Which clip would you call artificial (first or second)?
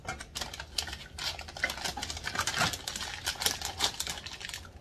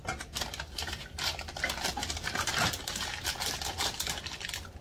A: second